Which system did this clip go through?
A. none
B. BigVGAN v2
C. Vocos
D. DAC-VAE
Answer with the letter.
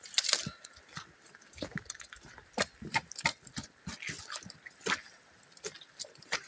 A